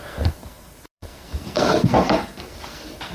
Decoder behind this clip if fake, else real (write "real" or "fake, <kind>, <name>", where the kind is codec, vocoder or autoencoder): fake, codec, SNAC